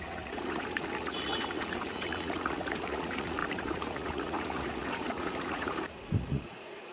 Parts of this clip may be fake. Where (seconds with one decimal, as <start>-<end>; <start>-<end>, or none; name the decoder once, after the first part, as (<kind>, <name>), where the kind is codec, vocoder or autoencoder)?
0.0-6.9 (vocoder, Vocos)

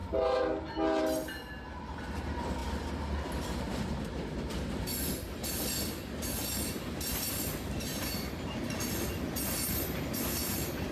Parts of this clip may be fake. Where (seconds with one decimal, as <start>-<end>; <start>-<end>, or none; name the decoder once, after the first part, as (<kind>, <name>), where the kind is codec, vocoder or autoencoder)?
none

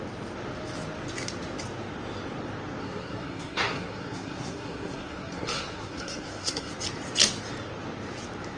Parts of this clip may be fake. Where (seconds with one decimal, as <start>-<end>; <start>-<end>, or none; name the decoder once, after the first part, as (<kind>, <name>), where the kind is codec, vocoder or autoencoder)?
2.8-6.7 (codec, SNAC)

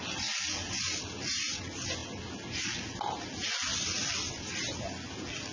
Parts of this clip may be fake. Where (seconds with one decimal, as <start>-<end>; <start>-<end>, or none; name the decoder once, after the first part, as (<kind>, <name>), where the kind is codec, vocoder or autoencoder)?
none

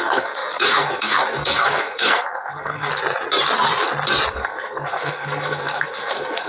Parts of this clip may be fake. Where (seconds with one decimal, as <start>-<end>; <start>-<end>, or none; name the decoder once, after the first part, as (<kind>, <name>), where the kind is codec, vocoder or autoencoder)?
0.0-2.9 (codec, SNAC); 4.3-6.5

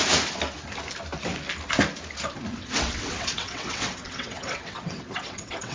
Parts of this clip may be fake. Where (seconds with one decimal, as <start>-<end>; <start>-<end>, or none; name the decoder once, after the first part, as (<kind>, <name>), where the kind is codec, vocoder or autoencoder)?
2.5-5.7 (vocoder, WaveNeXt)